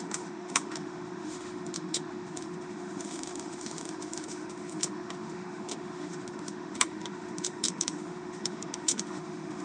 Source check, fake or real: fake